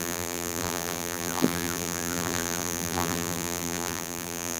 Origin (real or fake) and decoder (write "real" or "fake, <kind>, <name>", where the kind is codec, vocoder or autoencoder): fake, vocoder, BigVGAN v2